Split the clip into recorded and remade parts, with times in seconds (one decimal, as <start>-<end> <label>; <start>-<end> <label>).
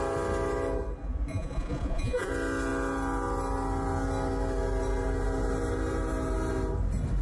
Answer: 0.0-1.3 recorded; 1.3-2.3 remade; 2.3-7.2 recorded